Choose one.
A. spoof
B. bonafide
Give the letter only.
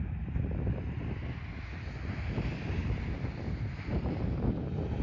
B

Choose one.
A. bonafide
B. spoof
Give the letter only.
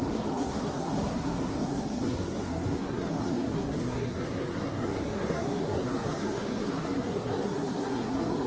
B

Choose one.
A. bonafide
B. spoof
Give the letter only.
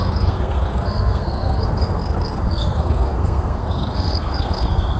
B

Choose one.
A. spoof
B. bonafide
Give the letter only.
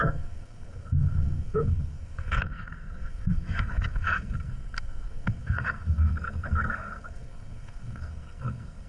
A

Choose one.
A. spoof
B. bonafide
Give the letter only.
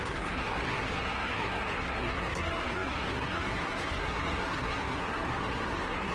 A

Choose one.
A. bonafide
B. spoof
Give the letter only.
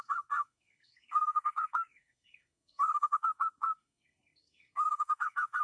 B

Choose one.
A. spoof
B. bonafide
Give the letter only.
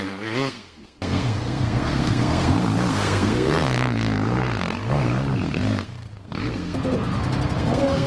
A